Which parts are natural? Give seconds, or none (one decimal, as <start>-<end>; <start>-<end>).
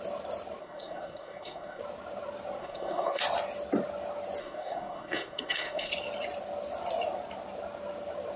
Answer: 0.0-0.6; 1.8-2.6; 3.2-4.4; 5.9-8.4